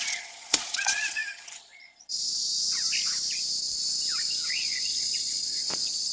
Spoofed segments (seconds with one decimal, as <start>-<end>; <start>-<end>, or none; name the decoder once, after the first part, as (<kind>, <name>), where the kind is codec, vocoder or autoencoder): 0.0-2.4 (vocoder, Vocos); 4.5-6.1